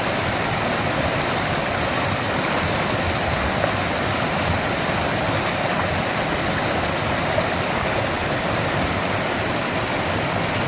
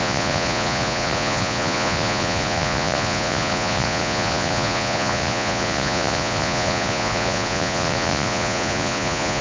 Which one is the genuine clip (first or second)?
first